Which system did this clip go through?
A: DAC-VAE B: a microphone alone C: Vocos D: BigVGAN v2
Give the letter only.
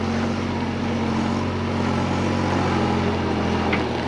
B